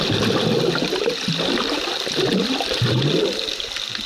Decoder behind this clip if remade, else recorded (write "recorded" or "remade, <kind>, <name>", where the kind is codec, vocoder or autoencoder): recorded